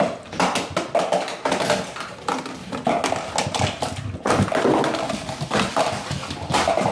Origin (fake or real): real